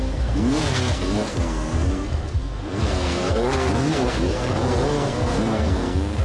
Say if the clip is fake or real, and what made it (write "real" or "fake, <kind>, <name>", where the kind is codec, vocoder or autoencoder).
fake, codec, SNAC